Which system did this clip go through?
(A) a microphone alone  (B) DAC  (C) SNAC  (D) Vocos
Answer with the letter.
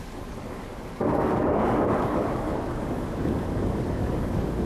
B